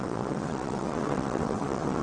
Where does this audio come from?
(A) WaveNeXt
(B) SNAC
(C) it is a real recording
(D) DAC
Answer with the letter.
A